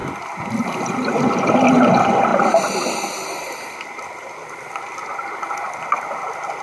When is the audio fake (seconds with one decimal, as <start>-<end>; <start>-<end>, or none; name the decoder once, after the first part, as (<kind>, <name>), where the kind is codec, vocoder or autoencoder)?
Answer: none